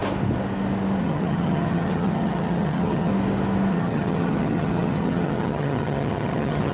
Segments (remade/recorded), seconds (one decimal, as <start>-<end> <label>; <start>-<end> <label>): 0.0-1.0 recorded; 1.0-3.1 remade; 3.1-3.7 recorded; 3.7-6.7 remade